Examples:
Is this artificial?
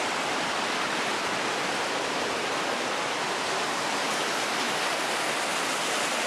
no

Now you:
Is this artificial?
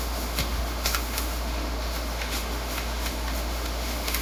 yes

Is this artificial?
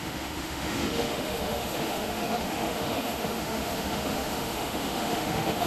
yes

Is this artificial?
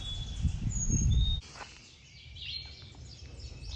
no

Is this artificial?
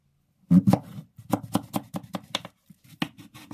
no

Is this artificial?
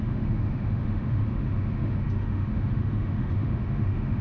yes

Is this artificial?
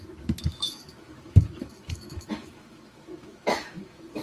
yes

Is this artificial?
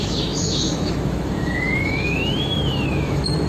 yes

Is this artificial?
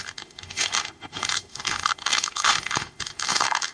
yes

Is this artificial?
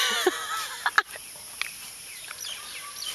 no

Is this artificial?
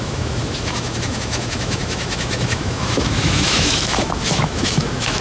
yes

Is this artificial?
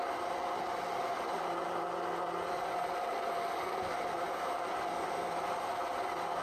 no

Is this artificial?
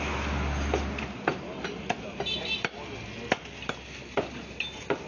no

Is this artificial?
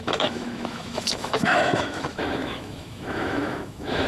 yes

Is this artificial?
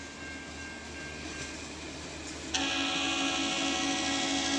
no